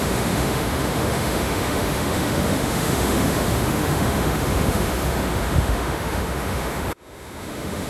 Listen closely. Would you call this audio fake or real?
fake